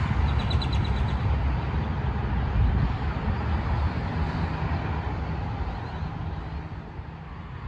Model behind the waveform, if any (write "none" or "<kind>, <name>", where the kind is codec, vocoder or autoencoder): none